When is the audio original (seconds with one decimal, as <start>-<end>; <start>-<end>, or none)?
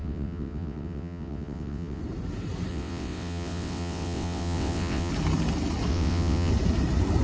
2.0-2.7; 5.1-5.9; 6.5-7.2